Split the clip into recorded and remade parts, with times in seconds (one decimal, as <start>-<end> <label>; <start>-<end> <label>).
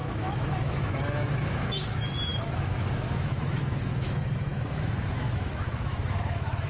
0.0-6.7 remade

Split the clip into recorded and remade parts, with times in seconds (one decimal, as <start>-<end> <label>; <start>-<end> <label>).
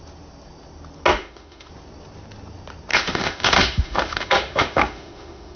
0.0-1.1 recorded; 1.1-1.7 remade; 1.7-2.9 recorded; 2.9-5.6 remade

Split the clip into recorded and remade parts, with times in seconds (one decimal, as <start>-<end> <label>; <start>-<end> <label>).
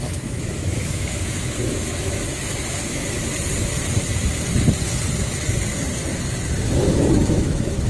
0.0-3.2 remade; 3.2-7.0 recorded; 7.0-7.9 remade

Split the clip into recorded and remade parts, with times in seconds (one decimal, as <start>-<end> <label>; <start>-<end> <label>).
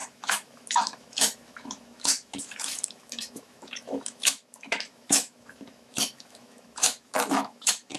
0.0-8.0 remade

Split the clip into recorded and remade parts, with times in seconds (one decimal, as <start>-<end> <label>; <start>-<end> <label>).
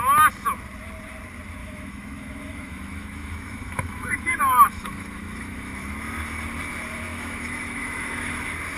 0.0-1.6 recorded; 1.6-5.9 remade; 5.9-7.1 recorded; 7.1-8.4 remade; 8.4-8.8 recorded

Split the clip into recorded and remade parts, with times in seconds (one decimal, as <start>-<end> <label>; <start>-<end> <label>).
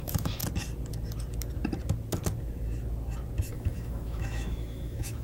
0.0-0.4 remade; 0.4-3.5 recorded; 3.5-5.2 remade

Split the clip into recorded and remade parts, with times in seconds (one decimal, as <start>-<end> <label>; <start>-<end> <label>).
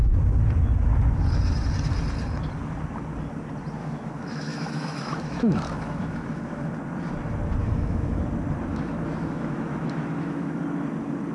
0.0-3.8 recorded; 3.8-6.7 remade; 6.7-7.6 recorded; 7.6-8.2 remade; 8.2-8.7 recorded; 8.7-10.6 remade; 10.6-11.3 recorded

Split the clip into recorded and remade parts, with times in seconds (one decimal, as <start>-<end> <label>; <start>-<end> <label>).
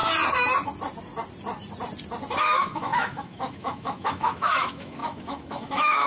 0.0-2.4 recorded; 2.4-6.1 remade